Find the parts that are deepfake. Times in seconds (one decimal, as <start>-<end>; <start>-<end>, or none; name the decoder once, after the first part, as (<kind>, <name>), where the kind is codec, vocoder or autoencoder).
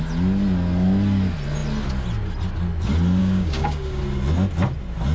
3.2-4.0 (codec, DAC)